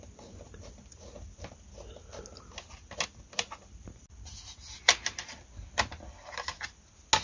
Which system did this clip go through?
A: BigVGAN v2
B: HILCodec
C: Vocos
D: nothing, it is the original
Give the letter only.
D